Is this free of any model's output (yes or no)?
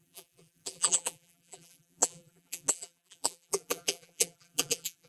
no